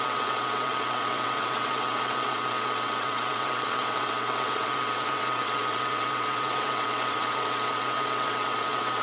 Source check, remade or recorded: remade